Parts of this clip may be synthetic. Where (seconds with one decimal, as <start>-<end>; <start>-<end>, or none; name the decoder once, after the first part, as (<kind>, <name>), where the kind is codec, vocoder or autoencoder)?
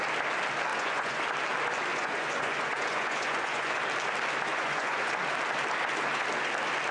0.7-1.2 (vocoder, Vocos); 1.9-3.8; 4.5-5.1